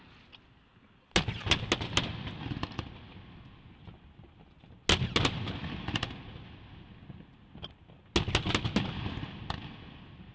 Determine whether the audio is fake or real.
real